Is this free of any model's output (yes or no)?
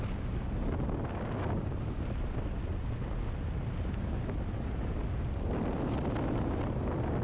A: yes